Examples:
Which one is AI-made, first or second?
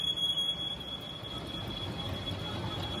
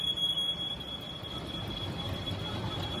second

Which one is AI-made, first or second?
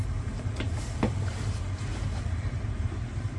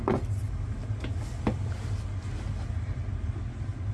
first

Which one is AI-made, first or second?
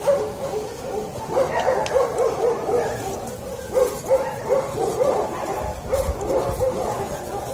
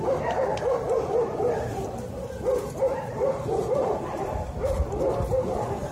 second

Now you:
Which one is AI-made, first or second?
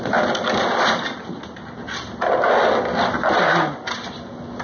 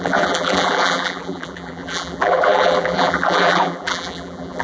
second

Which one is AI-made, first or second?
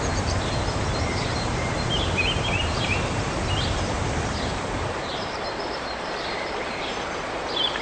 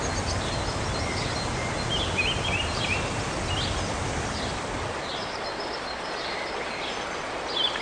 first